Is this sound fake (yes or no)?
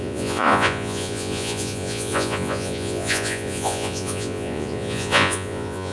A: yes